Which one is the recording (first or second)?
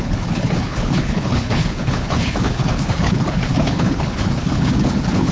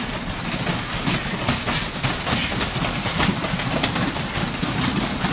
second